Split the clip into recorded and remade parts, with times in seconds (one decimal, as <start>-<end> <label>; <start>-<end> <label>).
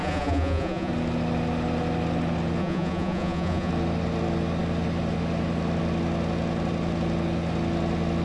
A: 0.0-0.9 remade; 0.9-2.6 recorded; 2.6-3.7 remade; 3.7-8.2 recorded